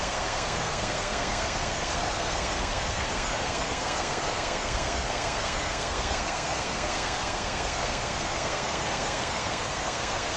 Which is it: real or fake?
fake